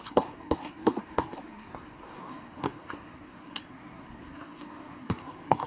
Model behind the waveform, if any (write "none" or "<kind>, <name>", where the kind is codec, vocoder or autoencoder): codec, SNAC